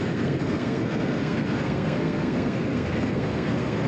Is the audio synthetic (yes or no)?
yes